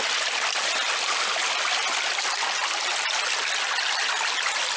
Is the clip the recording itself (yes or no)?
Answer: yes